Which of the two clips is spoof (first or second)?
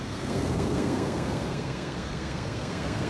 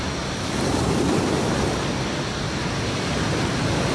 first